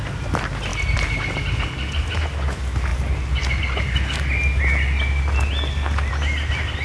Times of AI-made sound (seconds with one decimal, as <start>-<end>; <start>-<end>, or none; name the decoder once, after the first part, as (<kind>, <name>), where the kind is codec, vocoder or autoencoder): none